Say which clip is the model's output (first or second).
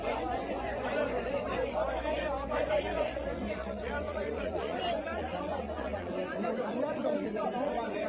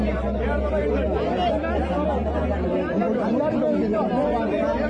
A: first